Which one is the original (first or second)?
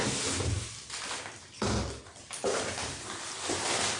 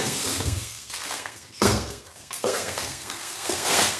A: first